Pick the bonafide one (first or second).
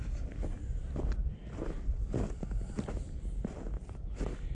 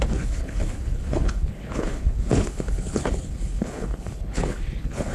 first